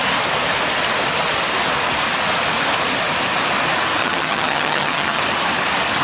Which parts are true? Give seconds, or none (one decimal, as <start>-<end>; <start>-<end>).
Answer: 0.0-4.0; 5.2-6.0